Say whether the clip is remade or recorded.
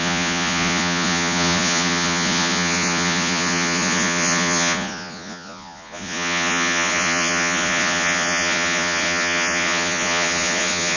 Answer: remade